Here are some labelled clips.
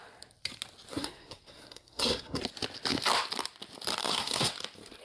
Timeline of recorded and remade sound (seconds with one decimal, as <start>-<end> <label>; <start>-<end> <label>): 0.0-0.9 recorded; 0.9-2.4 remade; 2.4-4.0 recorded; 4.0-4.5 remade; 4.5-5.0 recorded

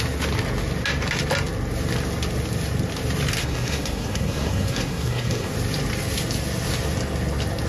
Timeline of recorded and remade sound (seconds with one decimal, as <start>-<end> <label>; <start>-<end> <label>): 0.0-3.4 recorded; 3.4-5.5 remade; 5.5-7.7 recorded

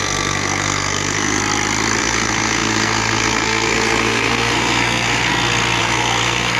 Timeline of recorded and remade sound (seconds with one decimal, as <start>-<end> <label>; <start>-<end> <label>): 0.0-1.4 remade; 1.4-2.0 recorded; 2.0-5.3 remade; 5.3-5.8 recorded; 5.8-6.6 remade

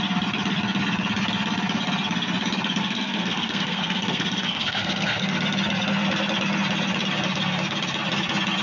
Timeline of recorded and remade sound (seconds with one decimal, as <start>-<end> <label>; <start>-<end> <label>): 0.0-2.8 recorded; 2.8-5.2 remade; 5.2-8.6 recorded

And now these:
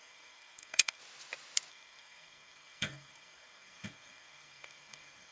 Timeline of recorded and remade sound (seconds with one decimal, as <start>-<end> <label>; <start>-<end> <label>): 0.0-1.0 remade; 1.0-1.7 recorded; 1.7-5.3 remade

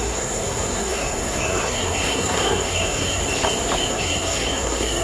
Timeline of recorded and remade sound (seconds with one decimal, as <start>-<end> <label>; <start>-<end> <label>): 0.0-3.2 remade; 3.2-3.9 recorded; 3.9-5.0 remade

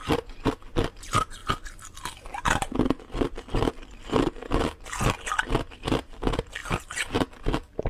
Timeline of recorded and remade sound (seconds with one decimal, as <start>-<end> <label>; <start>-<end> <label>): 0.0-7.9 recorded

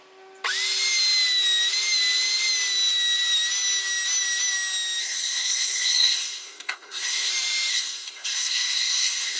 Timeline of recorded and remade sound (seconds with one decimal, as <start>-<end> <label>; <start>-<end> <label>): 0.0-5.0 recorded; 5.0-7.3 remade; 7.3-7.7 recorded; 7.7-9.4 remade